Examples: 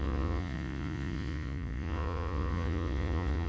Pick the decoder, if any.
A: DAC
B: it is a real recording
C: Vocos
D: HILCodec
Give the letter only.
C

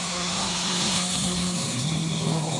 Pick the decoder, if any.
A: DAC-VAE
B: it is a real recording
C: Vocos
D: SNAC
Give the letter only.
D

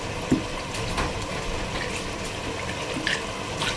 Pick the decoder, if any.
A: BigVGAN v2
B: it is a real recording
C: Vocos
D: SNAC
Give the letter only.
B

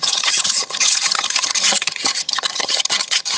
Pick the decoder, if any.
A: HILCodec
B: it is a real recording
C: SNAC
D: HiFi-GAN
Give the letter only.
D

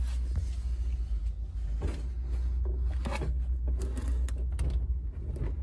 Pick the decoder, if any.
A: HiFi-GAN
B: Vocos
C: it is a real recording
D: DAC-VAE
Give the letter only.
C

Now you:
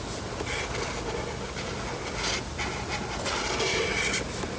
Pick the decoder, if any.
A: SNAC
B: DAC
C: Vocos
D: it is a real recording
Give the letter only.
D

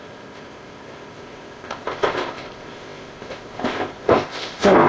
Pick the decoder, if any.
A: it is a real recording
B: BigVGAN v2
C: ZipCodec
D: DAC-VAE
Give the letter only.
C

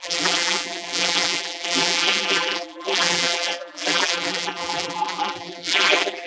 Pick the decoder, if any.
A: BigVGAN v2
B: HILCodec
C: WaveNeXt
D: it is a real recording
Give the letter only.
A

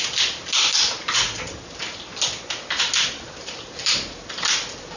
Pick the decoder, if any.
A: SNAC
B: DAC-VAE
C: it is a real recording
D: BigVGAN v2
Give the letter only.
C